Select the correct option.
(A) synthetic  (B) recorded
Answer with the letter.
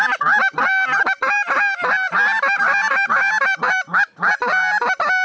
B